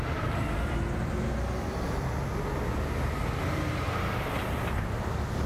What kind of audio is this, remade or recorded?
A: recorded